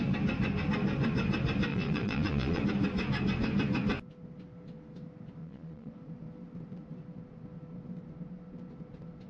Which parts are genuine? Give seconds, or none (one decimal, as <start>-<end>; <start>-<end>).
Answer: 0.0-1.7; 2.6-5.4; 5.9-9.3